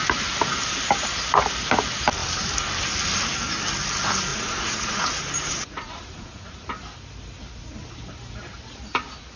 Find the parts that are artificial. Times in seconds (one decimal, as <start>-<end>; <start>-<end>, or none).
4.3-6.7